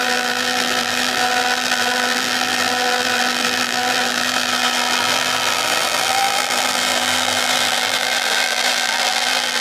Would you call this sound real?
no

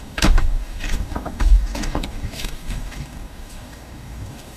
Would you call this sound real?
no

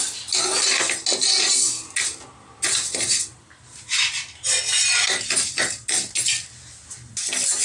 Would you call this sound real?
yes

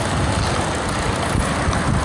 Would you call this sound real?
yes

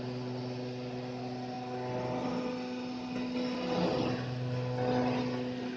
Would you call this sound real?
yes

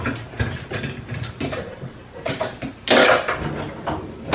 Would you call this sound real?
yes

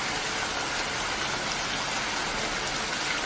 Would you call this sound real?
yes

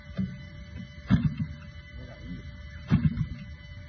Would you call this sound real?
yes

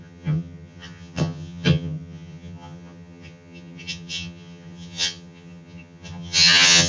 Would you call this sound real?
no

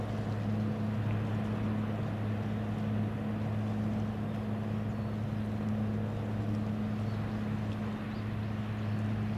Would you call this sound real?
yes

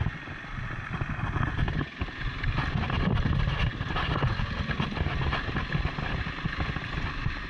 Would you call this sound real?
yes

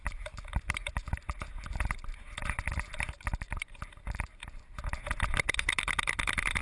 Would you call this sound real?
yes